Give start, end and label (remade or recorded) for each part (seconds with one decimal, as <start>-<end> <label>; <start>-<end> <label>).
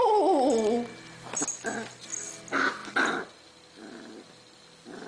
0.0-5.1 recorded